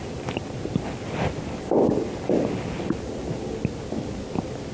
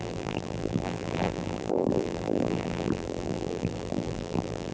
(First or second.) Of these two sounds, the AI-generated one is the second